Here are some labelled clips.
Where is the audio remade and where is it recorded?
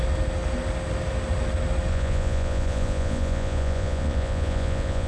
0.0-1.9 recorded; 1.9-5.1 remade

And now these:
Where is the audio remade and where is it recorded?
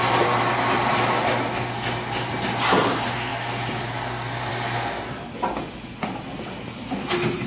0.0-7.5 recorded